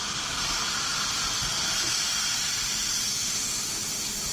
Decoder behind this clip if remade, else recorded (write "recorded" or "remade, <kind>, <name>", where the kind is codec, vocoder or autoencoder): recorded